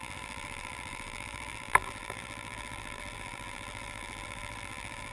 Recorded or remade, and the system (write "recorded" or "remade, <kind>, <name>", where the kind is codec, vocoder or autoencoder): remade, vocoder, BigVGAN v2